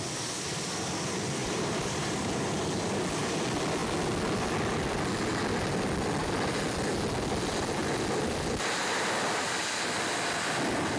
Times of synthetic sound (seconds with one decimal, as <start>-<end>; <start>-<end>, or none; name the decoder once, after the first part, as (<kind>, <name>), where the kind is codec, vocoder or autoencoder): 1.4-2.4 (vocoder, BigVGAN v2)

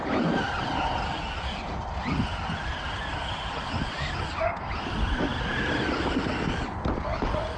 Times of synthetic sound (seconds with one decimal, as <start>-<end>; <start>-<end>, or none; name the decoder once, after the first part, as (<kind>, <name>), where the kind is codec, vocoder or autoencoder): none

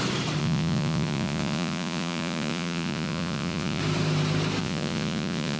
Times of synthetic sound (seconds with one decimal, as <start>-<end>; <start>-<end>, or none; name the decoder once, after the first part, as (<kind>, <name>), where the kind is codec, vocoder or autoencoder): 0.4-3.8 (vocoder, Vocos); 4.6-5.6

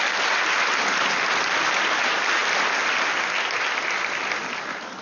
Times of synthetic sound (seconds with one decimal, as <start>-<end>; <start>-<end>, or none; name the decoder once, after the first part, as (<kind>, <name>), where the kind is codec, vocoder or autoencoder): none

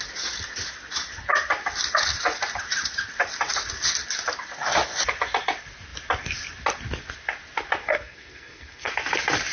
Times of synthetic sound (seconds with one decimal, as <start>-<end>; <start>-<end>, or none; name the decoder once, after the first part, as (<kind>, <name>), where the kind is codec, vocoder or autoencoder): 7.8-8.9 (codec, SNAC)

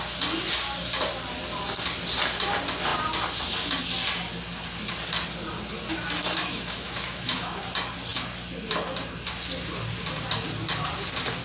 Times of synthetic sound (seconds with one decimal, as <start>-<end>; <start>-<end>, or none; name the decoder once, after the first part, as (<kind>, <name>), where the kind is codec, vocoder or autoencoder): 6.4-7.6 (autoencoder, DAC-VAE)

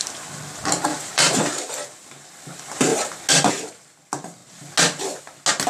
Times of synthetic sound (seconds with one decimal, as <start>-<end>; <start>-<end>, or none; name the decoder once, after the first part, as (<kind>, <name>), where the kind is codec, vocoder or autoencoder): 0.9-2.3 (vocoder, BigVGAN v2)

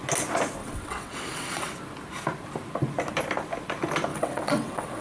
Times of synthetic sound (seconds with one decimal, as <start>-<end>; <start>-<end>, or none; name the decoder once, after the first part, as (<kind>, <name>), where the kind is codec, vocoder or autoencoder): 0.6-1.7 (vocoder, WaveNeXt); 4.1-5.0